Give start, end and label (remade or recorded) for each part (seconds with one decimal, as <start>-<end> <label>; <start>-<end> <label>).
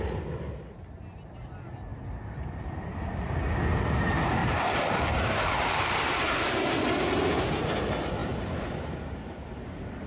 0.0-1.9 recorded; 1.9-2.6 remade; 2.6-4.4 recorded; 4.4-6.9 remade; 6.9-8.2 recorded; 8.2-9.2 remade; 9.2-10.1 recorded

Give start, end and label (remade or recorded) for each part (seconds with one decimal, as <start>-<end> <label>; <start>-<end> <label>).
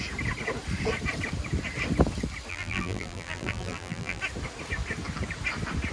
0.0-2.5 recorded; 2.5-4.2 remade; 4.2-5.9 recorded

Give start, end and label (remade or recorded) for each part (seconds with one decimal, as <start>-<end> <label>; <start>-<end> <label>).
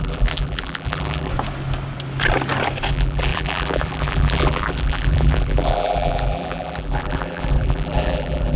0.0-1.3 remade; 1.3-2.9 recorded; 2.9-8.6 remade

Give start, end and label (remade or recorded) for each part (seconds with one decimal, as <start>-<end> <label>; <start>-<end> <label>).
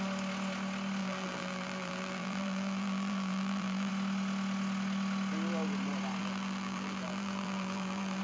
0.0-1.0 recorded; 1.0-3.9 remade; 3.9-6.2 recorded; 6.2-8.2 remade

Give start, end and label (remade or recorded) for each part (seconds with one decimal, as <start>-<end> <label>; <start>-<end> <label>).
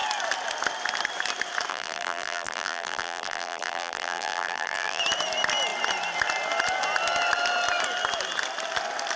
0.0-1.7 recorded; 1.7-5.0 remade; 5.0-9.2 recorded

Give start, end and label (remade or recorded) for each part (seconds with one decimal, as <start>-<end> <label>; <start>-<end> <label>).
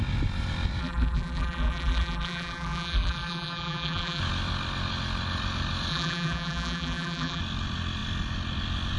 0.0-0.8 recorded; 0.8-4.2 remade; 4.2-5.9 recorded; 5.9-7.4 remade; 7.4-9.0 recorded